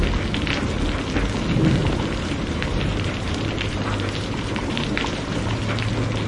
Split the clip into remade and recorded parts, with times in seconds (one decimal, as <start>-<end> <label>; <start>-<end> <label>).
0.0-1.8 recorded; 1.8-5.6 remade; 5.6-6.3 recorded